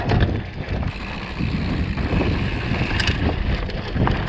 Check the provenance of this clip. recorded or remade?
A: recorded